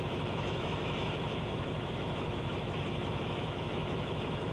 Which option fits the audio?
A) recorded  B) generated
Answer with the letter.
B